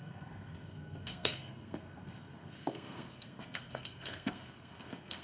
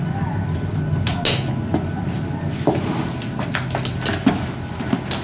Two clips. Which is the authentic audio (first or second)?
second